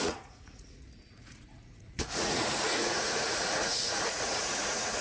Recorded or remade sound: remade